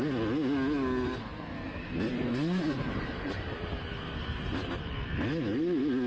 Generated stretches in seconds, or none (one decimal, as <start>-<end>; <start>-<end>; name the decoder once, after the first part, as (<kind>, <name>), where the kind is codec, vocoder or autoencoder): 2.3-4.7 (vocoder, BigVGAN v2)